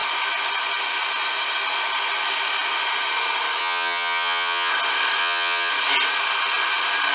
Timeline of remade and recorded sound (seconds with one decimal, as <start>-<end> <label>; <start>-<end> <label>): 0.0-3.6 recorded; 3.6-4.7 remade; 4.7-5.2 recorded; 5.2-5.7 remade; 5.7-7.1 recorded